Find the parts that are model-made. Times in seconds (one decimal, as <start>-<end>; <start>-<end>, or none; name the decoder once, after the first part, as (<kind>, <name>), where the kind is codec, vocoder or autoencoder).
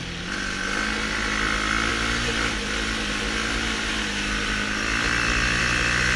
none